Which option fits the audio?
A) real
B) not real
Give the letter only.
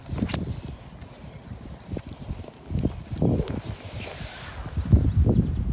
A